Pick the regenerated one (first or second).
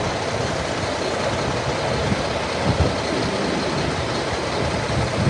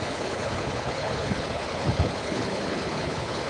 second